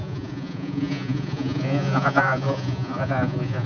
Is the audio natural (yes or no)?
no